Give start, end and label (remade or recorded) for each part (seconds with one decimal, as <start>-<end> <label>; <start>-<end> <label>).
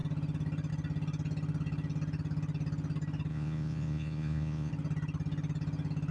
0.0-3.3 recorded; 3.3-4.7 remade; 4.7-6.1 recorded